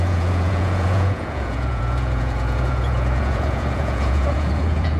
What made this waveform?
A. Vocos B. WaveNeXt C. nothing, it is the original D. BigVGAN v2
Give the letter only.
A